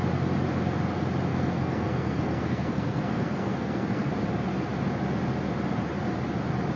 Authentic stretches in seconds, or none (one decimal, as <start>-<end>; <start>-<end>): 0.0-1.3; 4.1-6.8